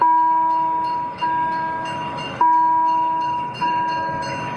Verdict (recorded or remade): remade